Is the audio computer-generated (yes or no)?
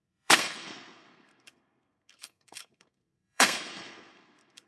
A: yes